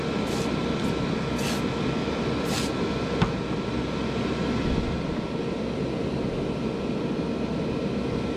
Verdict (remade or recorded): recorded